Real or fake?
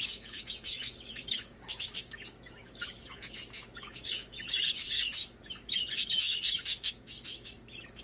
fake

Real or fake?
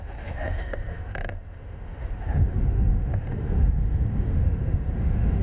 fake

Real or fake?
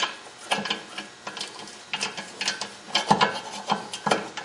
real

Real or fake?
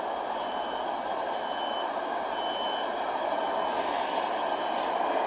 real